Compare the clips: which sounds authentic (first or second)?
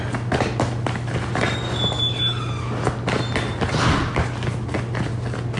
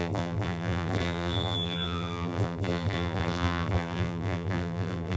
first